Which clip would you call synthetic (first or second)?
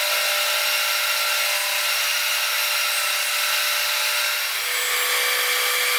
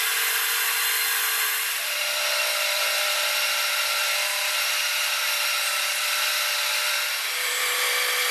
second